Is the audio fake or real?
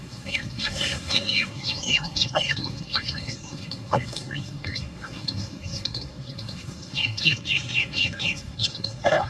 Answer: fake